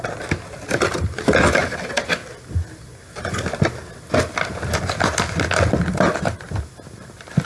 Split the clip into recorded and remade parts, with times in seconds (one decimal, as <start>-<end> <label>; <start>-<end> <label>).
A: 0.0-7.4 recorded